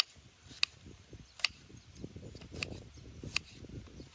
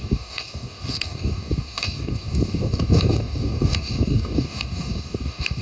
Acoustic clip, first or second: first